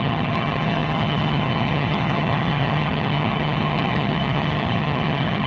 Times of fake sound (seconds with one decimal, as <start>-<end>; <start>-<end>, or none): 0.0-5.5